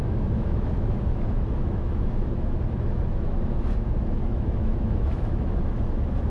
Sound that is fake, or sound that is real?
fake